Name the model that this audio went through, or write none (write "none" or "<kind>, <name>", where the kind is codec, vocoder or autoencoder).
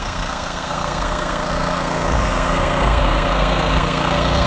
codec, SNAC